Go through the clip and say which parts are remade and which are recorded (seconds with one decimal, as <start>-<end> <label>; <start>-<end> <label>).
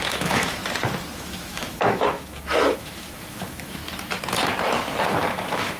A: 0.0-0.6 remade; 0.6-1.1 recorded; 1.1-3.8 remade; 3.8-5.1 recorded; 5.1-5.8 remade